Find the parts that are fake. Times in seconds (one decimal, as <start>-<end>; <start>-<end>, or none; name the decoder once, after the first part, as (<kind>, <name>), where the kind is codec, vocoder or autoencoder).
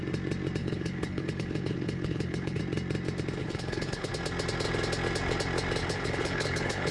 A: 0.6-2.6 (codec, HILCodec); 3.4-4.1; 5.8-6.9